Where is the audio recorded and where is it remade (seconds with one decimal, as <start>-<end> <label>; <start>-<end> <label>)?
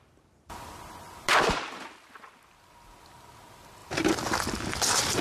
0.0-5.2 recorded